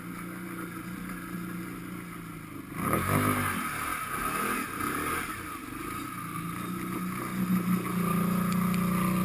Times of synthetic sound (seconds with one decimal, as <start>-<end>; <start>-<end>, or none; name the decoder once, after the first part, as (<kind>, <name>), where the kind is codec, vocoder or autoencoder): none